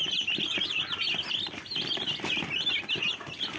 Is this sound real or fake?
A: real